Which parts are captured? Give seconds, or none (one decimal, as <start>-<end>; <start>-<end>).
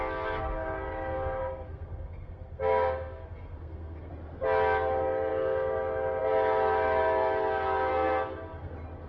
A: 0.0-1.4; 4.1-7.9; 8.7-9.1